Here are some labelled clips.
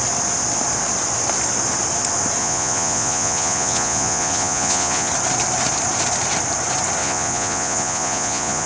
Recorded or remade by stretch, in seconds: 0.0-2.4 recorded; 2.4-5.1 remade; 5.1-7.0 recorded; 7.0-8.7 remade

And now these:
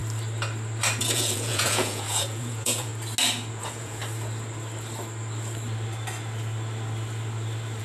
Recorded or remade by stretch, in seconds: 0.0-1.0 recorded; 1.0-2.9 remade; 2.9-3.5 recorded; 3.5-4.0 remade; 4.0-7.8 recorded

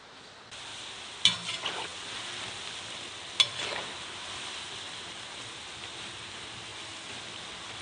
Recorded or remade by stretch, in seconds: 0.0-7.8 recorded

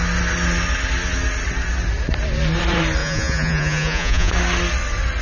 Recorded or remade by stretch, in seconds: 0.0-3.0 recorded; 3.0-4.3 remade; 4.3-5.2 recorded